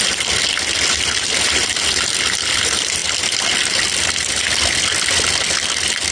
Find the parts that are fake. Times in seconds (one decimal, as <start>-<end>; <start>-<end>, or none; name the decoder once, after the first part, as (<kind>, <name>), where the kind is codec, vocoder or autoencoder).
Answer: none